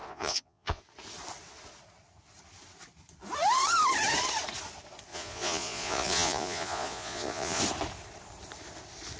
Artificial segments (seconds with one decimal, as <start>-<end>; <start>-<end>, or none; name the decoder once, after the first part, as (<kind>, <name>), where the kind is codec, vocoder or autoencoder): 0.0-0.8 (vocoder, Vocos); 5.1-7.6